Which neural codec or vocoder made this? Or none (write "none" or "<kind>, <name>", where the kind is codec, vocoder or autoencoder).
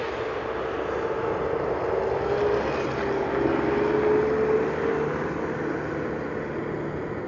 none